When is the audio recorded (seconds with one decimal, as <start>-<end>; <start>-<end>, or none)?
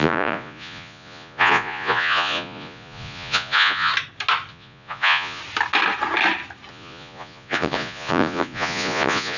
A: 3.9-4.5; 5.4-6.7